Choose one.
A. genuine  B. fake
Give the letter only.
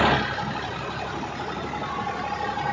A